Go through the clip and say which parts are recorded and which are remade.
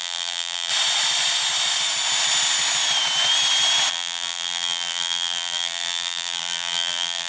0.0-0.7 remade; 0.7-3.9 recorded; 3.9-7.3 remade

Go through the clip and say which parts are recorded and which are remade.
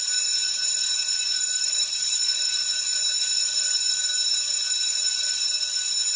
0.0-0.4 recorded; 0.4-4.1 remade; 4.1-4.5 recorded; 4.5-5.5 remade; 5.5-6.2 recorded